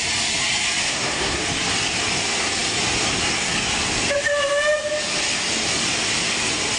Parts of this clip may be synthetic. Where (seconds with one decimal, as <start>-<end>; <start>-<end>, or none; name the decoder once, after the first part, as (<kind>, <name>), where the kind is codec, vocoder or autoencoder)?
0.8-1.4 (codec, SNAC)